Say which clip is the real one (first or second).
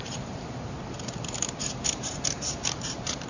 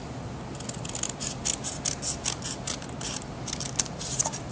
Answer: second